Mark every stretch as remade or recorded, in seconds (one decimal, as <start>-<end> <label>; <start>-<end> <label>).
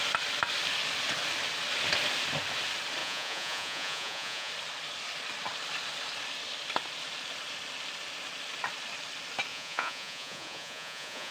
0.0-3.0 recorded; 3.0-4.5 remade; 4.5-9.5 recorded; 9.5-11.3 remade